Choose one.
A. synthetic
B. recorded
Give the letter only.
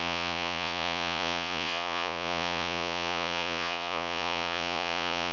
A